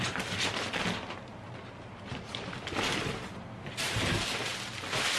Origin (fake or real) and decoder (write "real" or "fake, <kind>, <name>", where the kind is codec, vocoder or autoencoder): real